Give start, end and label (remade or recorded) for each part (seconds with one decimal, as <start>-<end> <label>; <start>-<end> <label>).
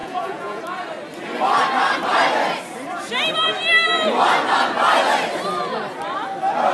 0.0-0.6 remade; 0.6-6.7 recorded